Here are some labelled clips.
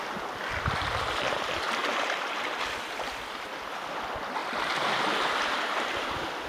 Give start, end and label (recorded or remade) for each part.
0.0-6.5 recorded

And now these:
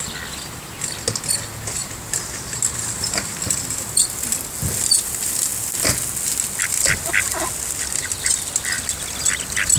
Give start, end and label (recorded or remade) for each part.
0.0-1.8 recorded; 1.8-3.3 remade; 3.3-9.8 recorded

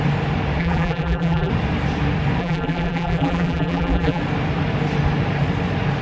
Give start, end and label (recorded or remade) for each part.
0.0-0.6 recorded; 0.6-1.5 remade; 1.5-2.4 recorded; 2.4-4.2 remade; 4.2-6.0 recorded

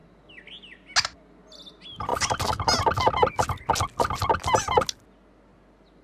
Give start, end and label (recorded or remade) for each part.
0.0-6.0 recorded

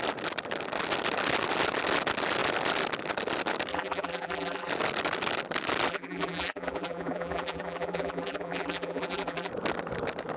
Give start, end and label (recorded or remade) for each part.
0.0-3.7 recorded; 3.7-4.7 remade; 4.7-5.9 recorded; 5.9-9.5 remade; 9.5-10.4 recorded

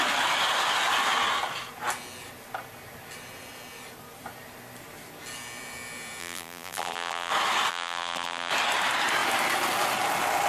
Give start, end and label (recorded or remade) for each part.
0.0-6.2 recorded; 6.2-7.3 remade; 7.3-7.7 recorded; 7.7-8.5 remade; 8.5-10.5 recorded

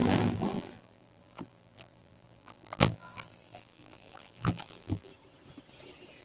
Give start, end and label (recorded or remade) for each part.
0.0-5.1 remade; 5.1-6.2 recorded